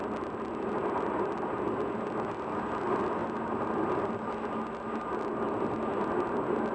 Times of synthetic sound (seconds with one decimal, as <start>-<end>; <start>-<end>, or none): none